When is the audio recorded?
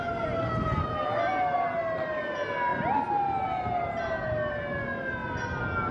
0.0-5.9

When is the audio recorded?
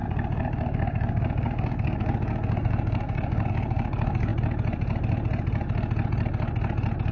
4.3-7.1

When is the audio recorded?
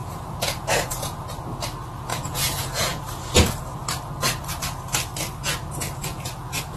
1.3-2.1; 3.0-6.0